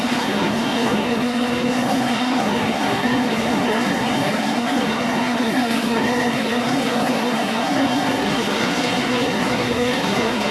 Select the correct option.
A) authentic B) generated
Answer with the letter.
B